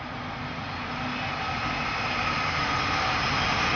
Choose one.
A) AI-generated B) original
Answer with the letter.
B